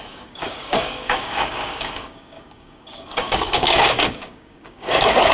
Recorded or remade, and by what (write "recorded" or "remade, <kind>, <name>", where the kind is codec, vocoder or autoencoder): remade, codec, DAC